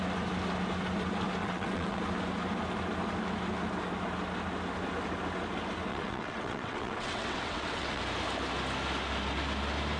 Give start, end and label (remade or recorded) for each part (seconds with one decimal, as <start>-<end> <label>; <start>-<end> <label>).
0.0-1.4 recorded; 1.4-2.0 remade; 2.0-5.9 recorded; 5.9-8.0 remade; 8.0-10.0 recorded